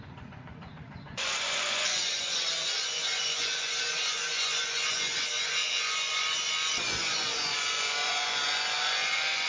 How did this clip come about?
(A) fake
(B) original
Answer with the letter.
A